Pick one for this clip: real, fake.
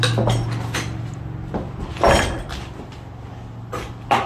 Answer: real